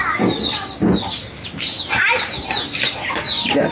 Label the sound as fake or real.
real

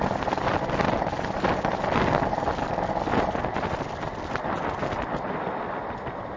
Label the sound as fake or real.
real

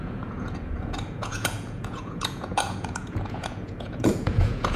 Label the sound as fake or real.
fake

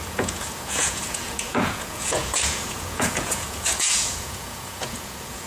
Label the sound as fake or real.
fake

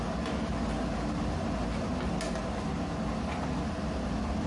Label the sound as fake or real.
real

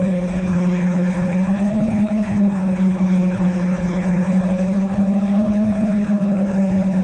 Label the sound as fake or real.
fake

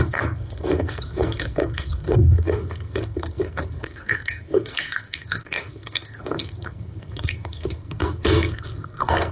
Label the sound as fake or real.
fake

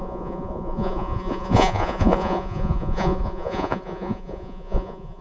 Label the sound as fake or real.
fake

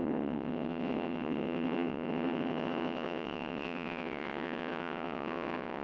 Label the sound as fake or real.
fake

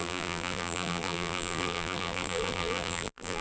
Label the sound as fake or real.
fake